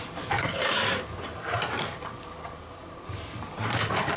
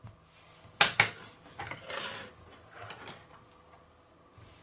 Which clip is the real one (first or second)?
second